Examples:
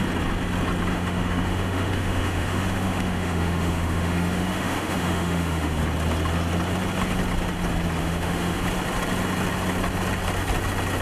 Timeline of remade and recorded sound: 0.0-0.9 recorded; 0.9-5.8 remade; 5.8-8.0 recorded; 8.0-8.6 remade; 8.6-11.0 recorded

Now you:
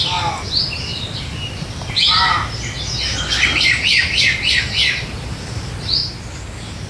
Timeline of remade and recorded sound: 0.0-0.9 recorded; 0.9-1.9 remade; 1.9-3.5 recorded; 3.5-4.5 remade; 4.5-6.9 recorded

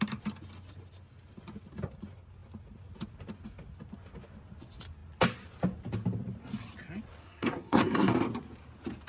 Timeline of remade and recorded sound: 0.0-7.2 recorded; 7.2-8.1 remade; 8.1-9.1 recorded

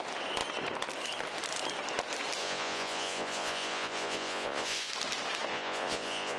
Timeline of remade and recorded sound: 0.0-2.4 recorded; 2.4-4.9 remade; 4.9-5.5 recorded; 5.5-6.4 remade

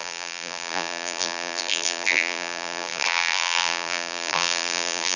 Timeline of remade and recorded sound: 0.0-5.2 remade

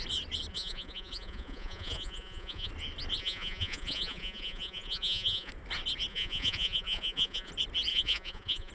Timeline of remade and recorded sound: 0.0-0.5 recorded; 0.5-2.7 remade; 2.7-3.2 recorded; 3.2-5.5 remade; 5.5-6.1 recorded; 6.1-7.5 remade; 7.5-7.9 recorded; 7.9-8.7 remade